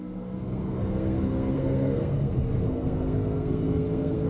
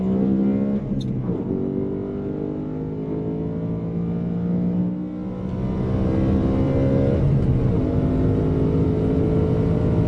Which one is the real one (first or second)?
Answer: second